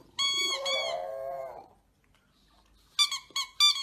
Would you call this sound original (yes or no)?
yes